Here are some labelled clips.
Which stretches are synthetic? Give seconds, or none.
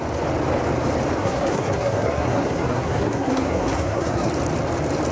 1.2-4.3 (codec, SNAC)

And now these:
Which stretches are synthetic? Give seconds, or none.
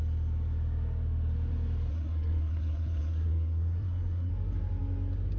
1.9-4.3 (codec, SNAC)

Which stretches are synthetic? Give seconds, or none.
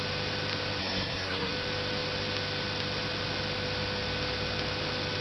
0.8-1.5 (codec, SNAC)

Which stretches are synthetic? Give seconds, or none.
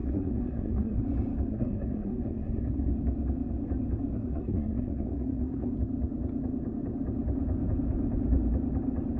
0.0-1.0 (codec, SNAC); 1.5-2.9; 4.1-5.7